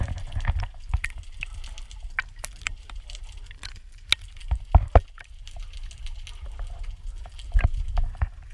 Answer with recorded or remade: recorded